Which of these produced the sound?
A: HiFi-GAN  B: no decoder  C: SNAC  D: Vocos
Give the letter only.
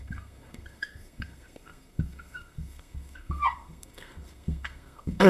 C